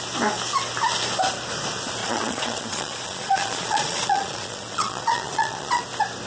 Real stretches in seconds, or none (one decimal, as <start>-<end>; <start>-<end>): 0.0-2.0; 5.8-6.3